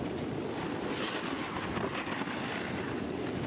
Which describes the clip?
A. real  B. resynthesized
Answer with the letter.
A